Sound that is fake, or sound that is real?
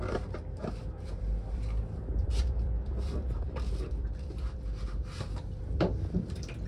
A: fake